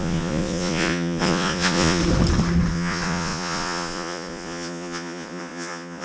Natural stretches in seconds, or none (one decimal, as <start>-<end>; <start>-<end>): 2.0-2.7